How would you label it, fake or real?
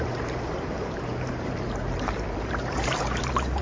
fake